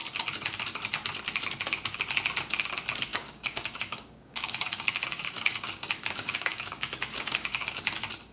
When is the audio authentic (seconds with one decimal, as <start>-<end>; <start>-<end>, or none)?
0.0-3.1; 7.8-8.3